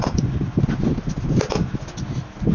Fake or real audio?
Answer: real